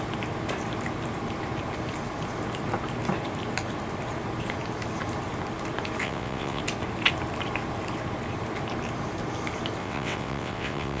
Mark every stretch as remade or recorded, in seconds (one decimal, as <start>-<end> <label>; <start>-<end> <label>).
0.0-6.0 recorded; 6.0-6.6 remade; 6.6-9.8 recorded; 9.8-11.0 remade